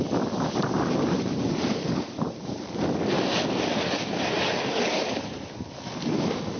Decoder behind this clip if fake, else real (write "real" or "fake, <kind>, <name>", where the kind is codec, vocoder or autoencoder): real